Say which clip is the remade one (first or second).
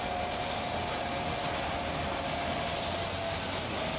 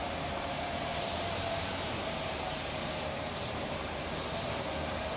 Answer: second